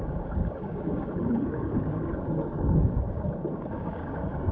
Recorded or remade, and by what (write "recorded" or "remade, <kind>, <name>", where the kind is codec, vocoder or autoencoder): remade, codec, DAC